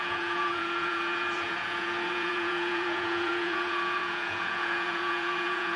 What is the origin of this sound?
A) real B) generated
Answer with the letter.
B